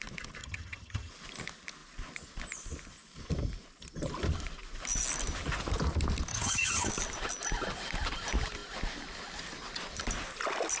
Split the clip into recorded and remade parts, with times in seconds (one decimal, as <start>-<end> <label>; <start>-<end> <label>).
0.0-0.4 recorded; 0.4-1.1 remade; 1.1-6.3 recorded; 6.3-6.9 remade; 6.9-10.8 recorded